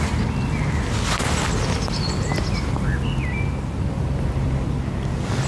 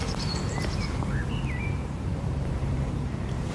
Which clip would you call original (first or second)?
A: first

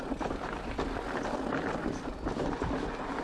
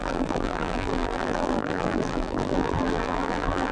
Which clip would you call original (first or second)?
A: first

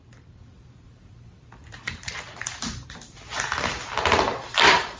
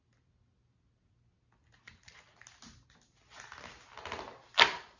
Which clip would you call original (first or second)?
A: second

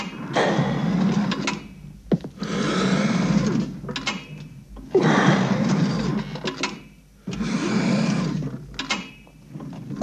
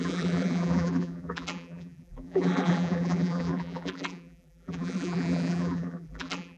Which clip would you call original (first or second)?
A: first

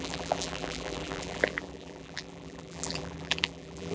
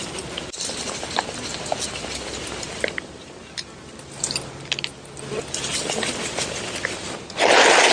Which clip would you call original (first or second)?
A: second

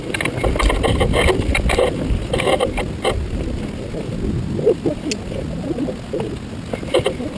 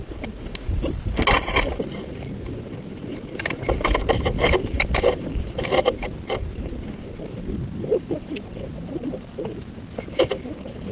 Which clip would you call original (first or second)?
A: first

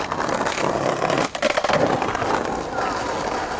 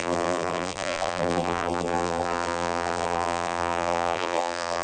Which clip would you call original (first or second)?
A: first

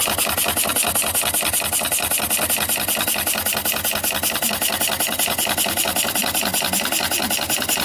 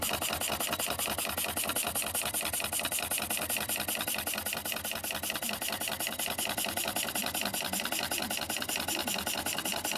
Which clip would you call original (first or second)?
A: first